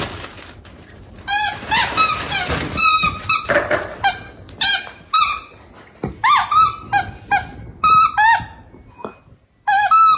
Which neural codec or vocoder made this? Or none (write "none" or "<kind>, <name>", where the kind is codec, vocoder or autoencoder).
none